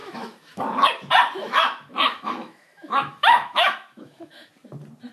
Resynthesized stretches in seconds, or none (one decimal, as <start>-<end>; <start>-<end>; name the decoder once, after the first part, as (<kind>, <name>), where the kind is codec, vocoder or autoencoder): 0.0-0.6 (autoencoder, DAC-VAE); 1.4-4.5